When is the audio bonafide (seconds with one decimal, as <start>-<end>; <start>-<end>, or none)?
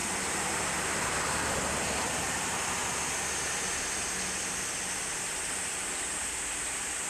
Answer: 2.0-7.1